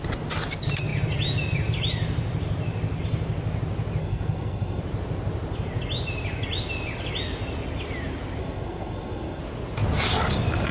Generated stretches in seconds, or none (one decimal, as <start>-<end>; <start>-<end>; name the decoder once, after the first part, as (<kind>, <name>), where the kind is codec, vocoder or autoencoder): 4.0-4.8 (codec, SNAC); 8.4-9.4